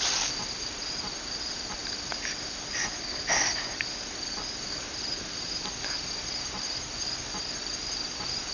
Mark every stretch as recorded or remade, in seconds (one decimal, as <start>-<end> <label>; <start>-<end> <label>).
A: 0.0-8.5 recorded